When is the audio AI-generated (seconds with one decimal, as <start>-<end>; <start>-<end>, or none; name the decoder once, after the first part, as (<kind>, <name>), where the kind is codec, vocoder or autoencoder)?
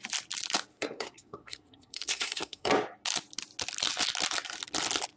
0.7-2.7 (codec, SNAC)